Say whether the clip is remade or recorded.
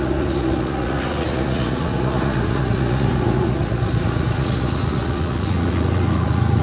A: remade